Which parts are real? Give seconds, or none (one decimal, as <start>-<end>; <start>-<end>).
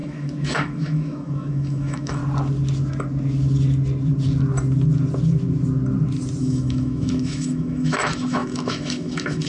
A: 2.2-6.4